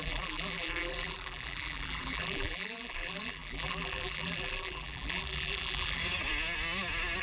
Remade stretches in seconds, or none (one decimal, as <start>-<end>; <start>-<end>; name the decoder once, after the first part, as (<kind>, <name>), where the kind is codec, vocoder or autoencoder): 0.0-6.0 (vocoder, BigVGAN v2)